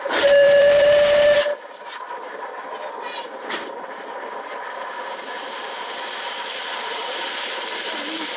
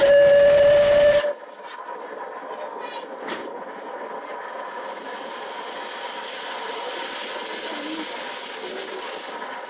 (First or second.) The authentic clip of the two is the second